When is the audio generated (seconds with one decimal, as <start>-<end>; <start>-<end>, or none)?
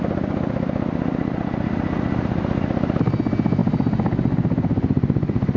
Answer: 3.6-5.6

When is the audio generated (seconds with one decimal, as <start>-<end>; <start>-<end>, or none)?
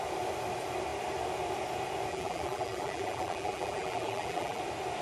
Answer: 2.1-4.6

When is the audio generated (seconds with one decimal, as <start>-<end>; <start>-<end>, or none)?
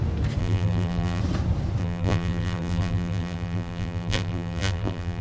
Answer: 0.4-1.2; 1.8-5.2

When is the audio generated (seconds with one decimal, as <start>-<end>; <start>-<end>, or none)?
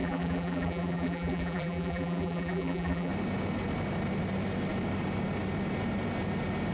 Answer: 0.0-3.1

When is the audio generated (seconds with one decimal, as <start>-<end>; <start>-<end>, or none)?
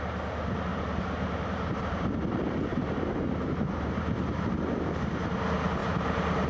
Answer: 0.7-2.0; 2.7-4.0; 5.8-6.5